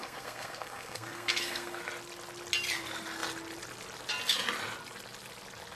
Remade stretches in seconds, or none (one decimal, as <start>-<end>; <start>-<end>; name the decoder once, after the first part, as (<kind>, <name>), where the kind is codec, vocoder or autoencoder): 0.0-1.8 (codec, SNAC)